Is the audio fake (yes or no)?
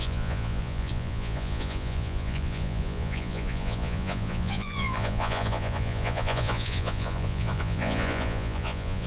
yes